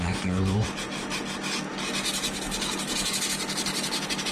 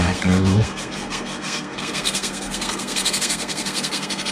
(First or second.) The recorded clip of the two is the first